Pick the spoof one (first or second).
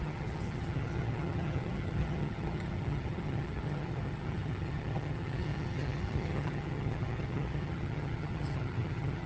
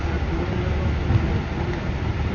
first